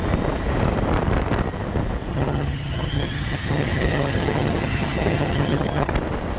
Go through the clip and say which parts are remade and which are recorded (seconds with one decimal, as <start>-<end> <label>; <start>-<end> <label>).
0.0-2.1 recorded; 2.1-5.9 remade; 5.9-6.4 recorded